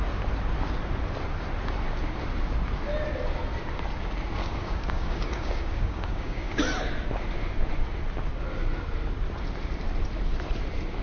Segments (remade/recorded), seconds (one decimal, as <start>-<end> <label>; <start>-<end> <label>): 0.0-4.4 recorded; 4.4-6.6 remade; 6.6-11.0 recorded